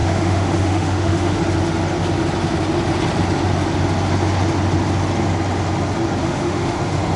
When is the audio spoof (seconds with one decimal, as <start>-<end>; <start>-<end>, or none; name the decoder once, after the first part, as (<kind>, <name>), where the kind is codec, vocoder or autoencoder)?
0.0-1.4 (autoencoder, DAC-VAE); 6.2-6.8